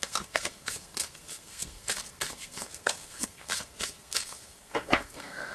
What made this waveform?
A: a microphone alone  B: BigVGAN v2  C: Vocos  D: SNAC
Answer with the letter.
D